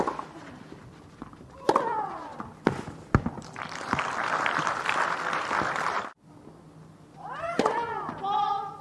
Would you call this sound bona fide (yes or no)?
no